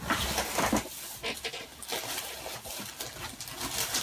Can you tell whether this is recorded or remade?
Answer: recorded